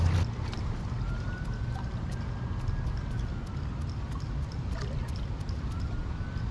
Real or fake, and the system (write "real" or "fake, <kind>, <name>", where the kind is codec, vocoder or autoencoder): real